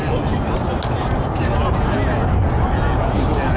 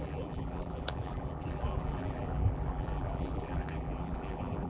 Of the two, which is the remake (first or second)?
second